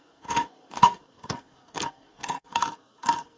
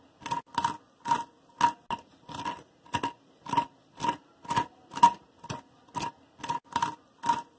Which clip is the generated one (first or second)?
first